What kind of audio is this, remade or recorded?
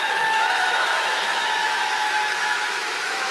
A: remade